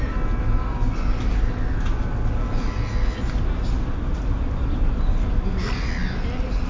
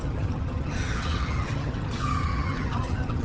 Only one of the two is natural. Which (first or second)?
first